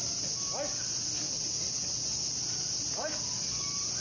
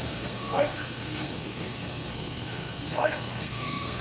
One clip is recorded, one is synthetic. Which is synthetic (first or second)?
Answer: second